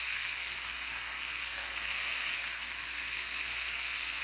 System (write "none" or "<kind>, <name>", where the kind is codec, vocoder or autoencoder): codec, SNAC